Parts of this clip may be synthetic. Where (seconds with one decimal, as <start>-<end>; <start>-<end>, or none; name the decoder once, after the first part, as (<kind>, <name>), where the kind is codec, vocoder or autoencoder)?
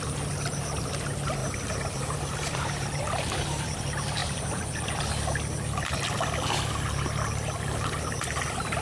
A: 1.4-3.8 (vocoder, BigVGAN v2); 4.2-5.0